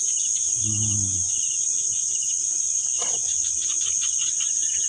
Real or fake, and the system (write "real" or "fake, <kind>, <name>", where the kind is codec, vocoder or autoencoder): real